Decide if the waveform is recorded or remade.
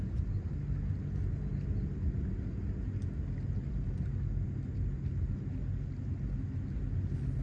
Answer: recorded